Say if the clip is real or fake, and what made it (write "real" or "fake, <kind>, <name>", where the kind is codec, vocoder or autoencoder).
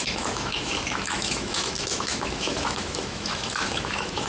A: fake, autoencoder, DAC-VAE